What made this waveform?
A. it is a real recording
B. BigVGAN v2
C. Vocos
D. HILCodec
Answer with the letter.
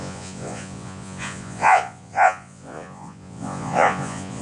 C